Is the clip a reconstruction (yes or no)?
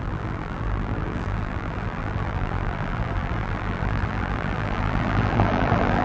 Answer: yes